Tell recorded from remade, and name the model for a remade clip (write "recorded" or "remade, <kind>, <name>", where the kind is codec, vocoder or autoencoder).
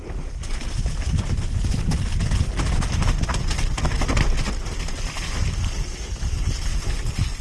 recorded